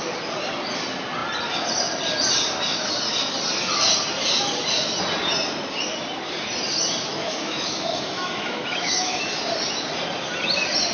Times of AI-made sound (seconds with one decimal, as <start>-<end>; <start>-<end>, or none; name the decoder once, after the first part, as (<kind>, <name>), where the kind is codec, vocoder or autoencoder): 7.1-9.3 (autoencoder, DAC-VAE)